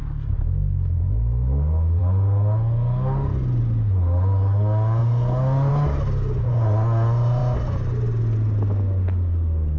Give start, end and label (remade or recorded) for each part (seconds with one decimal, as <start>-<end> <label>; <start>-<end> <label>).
0.0-9.8 recorded